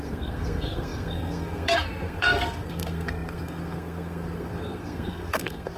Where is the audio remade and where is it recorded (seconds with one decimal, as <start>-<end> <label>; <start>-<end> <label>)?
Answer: 0.0-5.8 remade